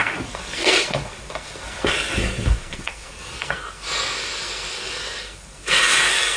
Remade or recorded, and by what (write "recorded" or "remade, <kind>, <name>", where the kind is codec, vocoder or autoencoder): remade, codec, SNAC